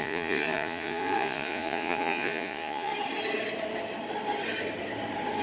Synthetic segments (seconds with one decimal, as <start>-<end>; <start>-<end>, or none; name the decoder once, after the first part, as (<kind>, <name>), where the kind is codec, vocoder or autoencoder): 0.0-2.9 (vocoder, Vocos)